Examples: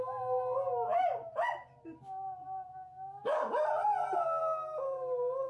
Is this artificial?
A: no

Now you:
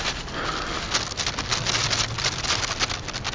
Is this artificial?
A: no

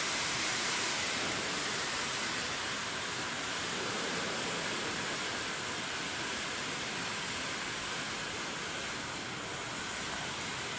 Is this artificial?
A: no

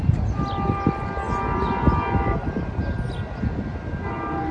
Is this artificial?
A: no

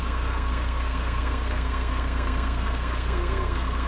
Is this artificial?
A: yes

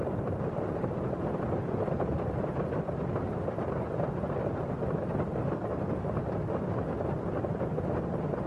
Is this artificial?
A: no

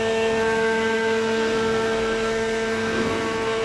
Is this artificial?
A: yes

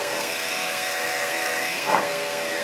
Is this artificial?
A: yes